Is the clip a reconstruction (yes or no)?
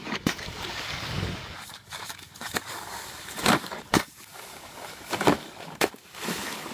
yes